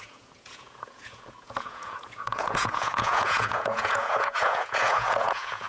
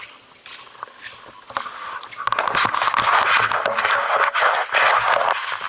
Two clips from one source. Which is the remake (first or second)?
first